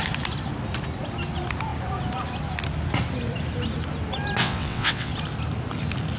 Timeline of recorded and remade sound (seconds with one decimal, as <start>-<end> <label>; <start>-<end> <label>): 0.0-4.4 recorded; 4.4-5.1 remade; 5.1-6.2 recorded